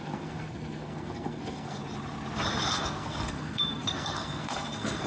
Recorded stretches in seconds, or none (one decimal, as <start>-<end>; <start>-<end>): 1.8-2.7